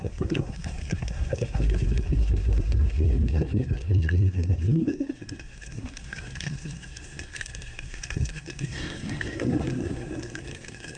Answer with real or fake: fake